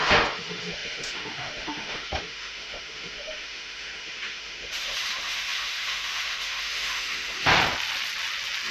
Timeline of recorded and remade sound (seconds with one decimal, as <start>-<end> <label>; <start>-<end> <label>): 0.0-7.5 remade; 7.5-8.7 recorded